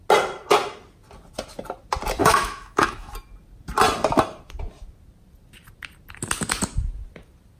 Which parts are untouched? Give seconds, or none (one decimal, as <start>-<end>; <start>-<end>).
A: 0.0-2.2; 3.1-7.6